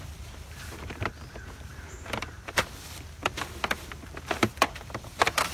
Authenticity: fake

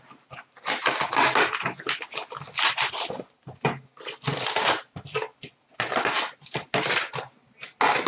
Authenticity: real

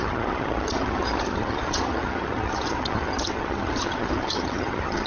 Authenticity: fake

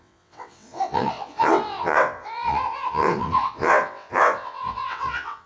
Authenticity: fake